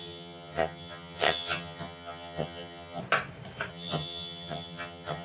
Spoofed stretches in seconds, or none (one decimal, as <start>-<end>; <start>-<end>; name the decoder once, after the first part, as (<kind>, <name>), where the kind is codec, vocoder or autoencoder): 0.0-3.0 (vocoder, HiFi-GAN); 3.7-5.2

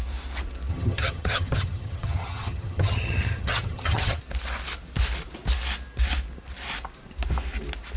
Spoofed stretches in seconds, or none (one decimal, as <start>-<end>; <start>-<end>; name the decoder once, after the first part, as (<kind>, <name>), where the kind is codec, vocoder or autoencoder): 0.7-4.2 (vocoder, HiFi-GAN)